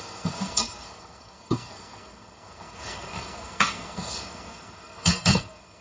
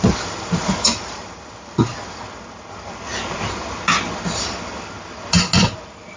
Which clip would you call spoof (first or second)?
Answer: first